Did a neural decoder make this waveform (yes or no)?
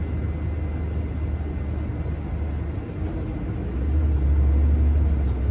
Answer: no